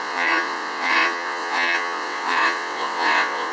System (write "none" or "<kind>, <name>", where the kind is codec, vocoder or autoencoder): vocoder, WaveNeXt